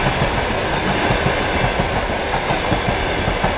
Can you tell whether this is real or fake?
real